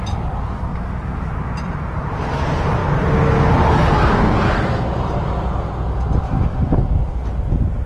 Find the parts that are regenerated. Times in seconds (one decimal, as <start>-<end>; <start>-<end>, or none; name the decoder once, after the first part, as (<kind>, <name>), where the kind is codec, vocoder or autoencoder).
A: 0.7-2.2 (vocoder, BigVGAN v2)